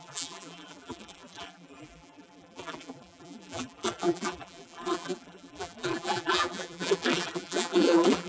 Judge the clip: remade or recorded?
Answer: remade